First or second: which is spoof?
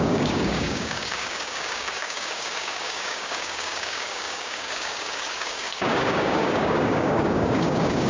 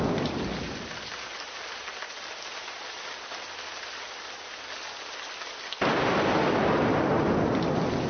first